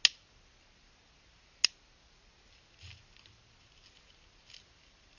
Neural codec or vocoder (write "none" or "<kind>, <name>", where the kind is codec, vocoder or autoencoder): none